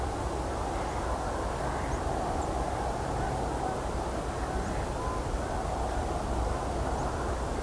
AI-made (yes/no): no